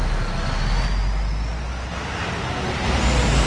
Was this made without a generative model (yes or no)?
yes